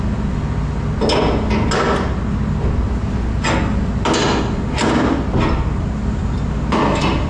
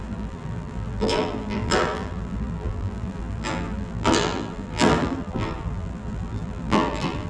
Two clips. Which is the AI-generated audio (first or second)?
second